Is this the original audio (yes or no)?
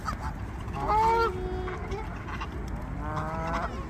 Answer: yes